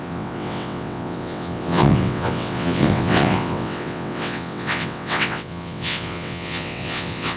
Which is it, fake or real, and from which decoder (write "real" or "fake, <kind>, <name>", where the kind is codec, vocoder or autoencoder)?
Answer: fake, vocoder, WaveNeXt